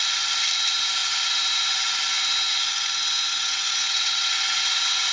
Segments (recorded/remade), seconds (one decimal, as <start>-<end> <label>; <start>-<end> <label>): 0.0-3.3 recorded; 3.3-5.1 remade